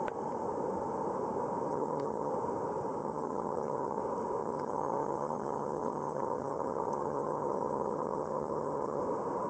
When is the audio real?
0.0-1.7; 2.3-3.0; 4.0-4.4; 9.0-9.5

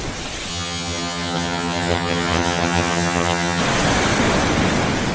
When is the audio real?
0.0-0.5; 3.6-5.1

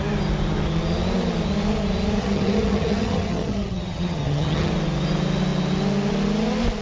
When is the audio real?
0.0-2.2; 4.7-6.8

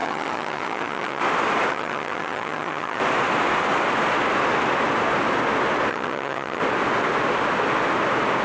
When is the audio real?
1.2-1.7; 3.0-5.9; 6.6-8.4

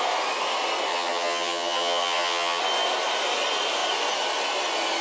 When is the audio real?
0.0-0.9; 2.6-5.0

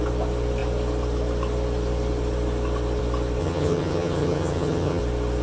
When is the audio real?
0.0-3.4; 5.0-5.4

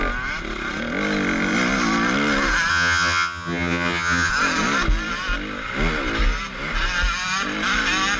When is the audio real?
0.0-2.7; 4.3-8.2

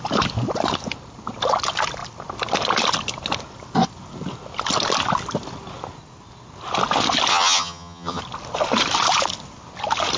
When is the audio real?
0.0-7.3; 8.2-10.2